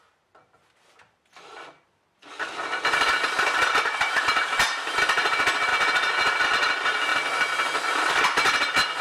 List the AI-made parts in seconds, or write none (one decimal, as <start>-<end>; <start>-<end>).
0.0-5.7; 6.4-9.0